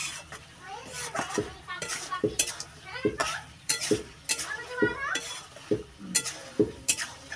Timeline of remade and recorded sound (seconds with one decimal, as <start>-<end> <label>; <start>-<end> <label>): 0.0-2.5 remade; 2.5-3.2 recorded; 3.2-4.2 remade; 4.2-6.4 recorded; 6.4-7.0 remade; 7.0-7.4 recorded